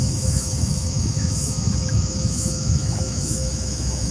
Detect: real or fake fake